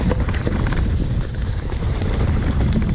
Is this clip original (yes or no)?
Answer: no